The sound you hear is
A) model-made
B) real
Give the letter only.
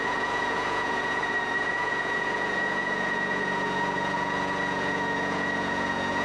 A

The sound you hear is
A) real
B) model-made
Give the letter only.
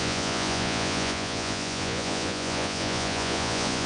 B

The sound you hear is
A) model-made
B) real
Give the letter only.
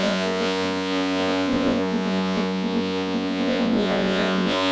A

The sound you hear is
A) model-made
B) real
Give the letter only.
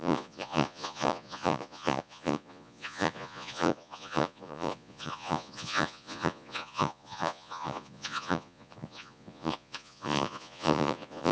A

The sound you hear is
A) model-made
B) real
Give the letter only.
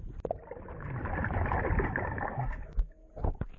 B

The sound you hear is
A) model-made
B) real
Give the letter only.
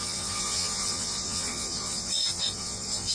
A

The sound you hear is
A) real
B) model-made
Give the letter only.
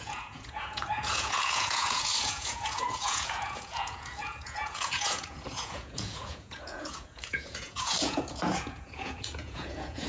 B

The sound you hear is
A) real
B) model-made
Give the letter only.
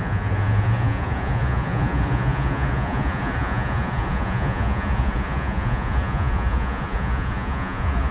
B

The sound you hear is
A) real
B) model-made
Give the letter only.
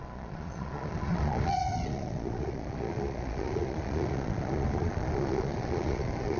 B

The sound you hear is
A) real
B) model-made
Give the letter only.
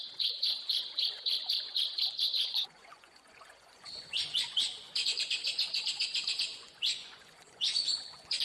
B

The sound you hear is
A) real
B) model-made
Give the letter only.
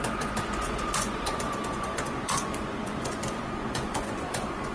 B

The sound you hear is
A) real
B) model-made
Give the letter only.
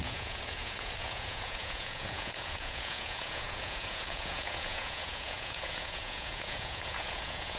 B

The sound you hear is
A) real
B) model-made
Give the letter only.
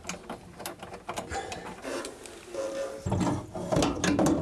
A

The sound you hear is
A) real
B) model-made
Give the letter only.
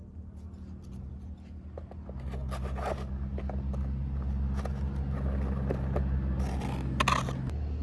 A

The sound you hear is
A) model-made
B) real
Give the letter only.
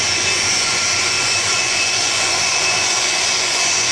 A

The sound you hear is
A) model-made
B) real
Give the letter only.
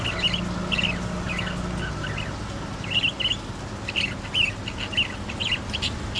B